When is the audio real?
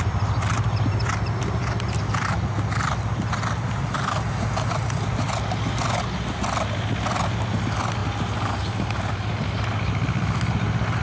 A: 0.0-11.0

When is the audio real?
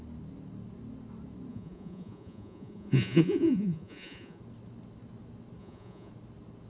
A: 0.0-1.5; 4.4-5.6; 6.1-6.7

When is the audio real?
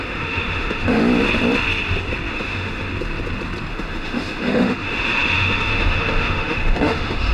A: 1.0-2.3; 2.9-3.7